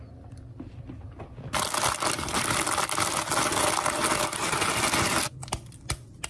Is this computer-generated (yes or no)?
no